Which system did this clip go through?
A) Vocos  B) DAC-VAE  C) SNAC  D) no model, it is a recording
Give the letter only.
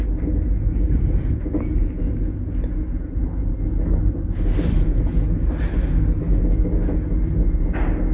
D